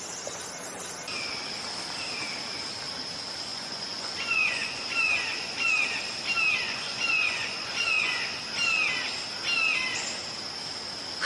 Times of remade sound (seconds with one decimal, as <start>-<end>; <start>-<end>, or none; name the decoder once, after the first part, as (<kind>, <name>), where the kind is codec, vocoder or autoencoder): 3.5-5.7 (vocoder, Vocos); 6.6-8.4